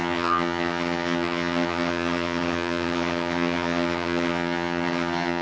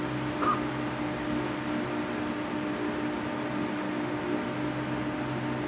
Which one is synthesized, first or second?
first